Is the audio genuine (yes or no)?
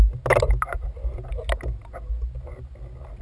yes